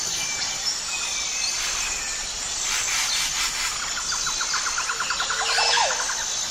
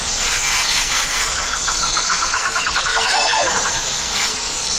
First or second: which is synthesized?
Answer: second